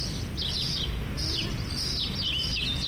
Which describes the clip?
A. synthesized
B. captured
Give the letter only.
B